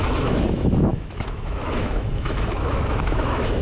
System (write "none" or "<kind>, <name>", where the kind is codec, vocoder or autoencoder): autoencoder, DAC-VAE